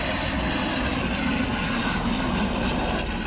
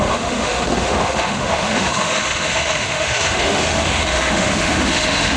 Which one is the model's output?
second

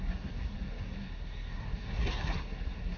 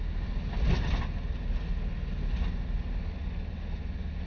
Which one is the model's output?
first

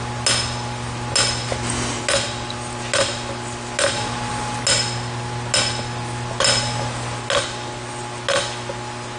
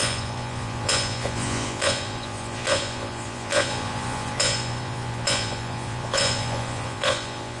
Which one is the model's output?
second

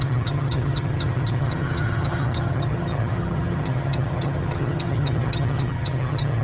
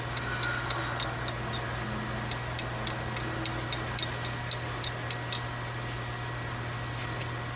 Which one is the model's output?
first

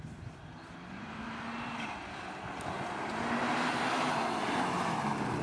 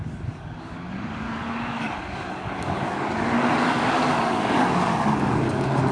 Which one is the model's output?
second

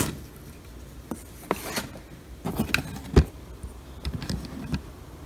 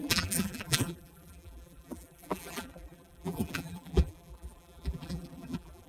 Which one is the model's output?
second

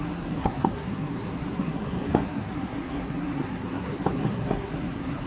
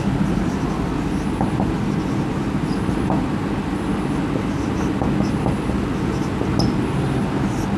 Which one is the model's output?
first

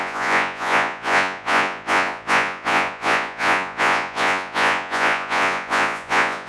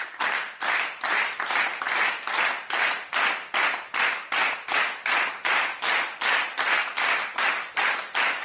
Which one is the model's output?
first